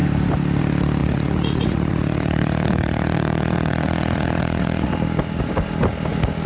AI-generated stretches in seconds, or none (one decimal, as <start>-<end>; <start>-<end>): 1.0-4.9